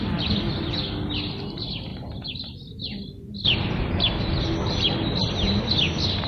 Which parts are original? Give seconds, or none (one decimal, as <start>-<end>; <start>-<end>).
0.0-6.3